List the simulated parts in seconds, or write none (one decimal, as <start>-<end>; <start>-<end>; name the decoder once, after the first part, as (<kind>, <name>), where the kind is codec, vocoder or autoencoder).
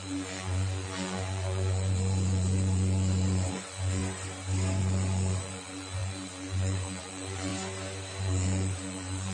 0.0-4.0 (vocoder, Vocos); 4.8-7.5; 8.2-9.3